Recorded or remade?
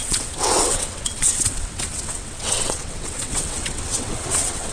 remade